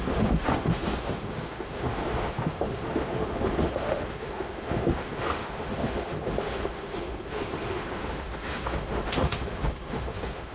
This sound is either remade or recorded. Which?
remade